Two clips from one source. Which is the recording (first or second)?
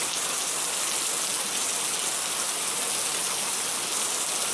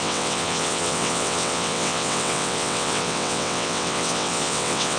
first